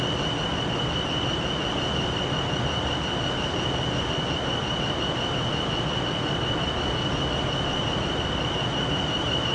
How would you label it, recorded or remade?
recorded